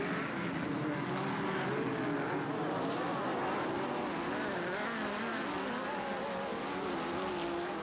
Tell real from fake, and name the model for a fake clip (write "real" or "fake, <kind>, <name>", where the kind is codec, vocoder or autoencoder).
real